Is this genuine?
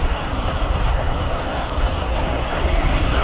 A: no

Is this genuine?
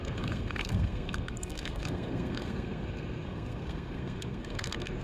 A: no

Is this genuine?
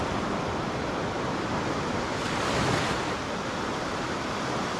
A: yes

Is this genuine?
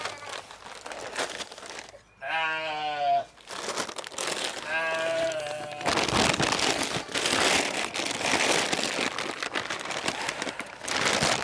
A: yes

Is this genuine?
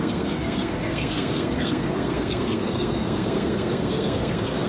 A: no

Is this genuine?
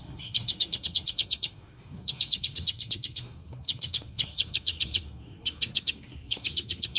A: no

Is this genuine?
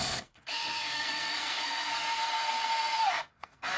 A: no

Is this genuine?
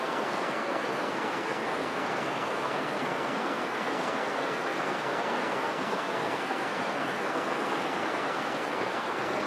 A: no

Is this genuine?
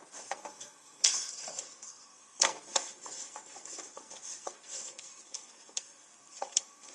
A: no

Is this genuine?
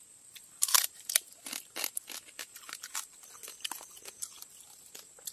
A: yes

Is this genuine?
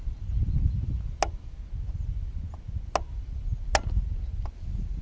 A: yes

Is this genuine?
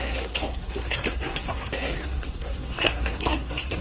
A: no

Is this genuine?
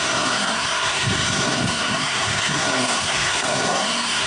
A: no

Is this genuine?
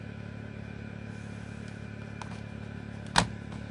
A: yes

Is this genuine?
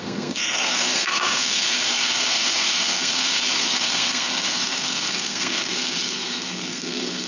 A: no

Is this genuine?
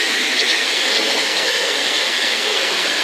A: no